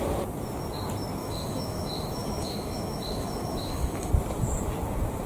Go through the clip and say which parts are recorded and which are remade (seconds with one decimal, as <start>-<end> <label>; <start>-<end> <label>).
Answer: 0.0-1.2 recorded; 1.2-4.1 remade; 4.1-5.3 recorded